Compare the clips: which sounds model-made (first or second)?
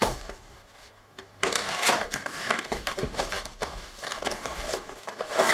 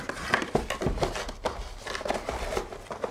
first